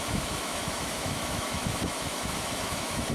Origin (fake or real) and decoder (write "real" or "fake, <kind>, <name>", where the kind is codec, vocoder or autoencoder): fake, autoencoder, DAC-VAE